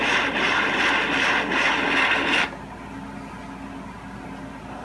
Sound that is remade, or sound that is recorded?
recorded